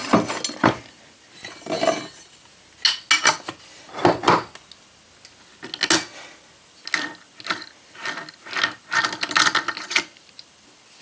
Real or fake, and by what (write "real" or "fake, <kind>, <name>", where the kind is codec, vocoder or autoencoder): real